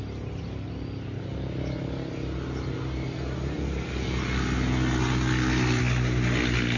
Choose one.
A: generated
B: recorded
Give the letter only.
B